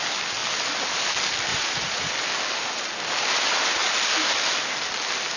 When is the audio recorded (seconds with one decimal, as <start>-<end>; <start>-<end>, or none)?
0.0-1.5; 2.1-5.4